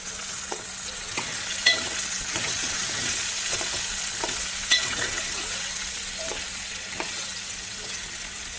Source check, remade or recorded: remade